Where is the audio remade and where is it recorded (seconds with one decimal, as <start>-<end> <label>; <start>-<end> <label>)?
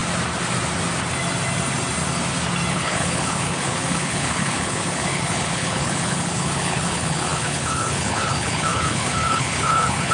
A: 0.0-2.7 recorded; 2.7-10.1 remade